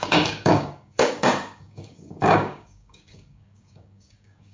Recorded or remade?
remade